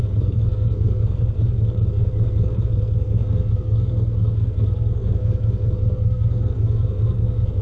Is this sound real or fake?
fake